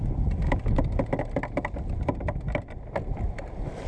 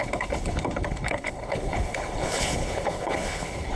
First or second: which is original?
first